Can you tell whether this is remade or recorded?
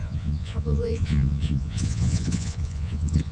remade